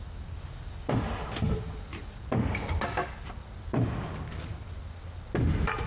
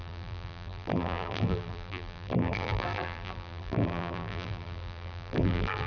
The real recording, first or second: first